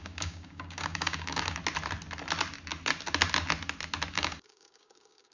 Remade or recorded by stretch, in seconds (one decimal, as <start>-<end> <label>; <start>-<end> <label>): 0.0-1.6 remade; 1.6-4.1 recorded; 4.1-5.3 remade